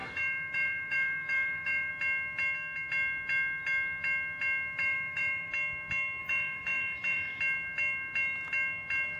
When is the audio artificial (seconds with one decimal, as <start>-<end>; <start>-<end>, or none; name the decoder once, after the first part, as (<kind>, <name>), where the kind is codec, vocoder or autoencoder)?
0.0-1.9 (autoencoder, DAC-VAE); 4.8-5.5; 6.2-7.4